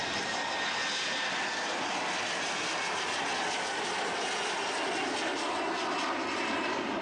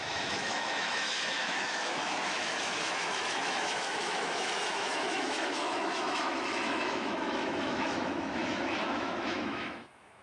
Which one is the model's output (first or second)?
second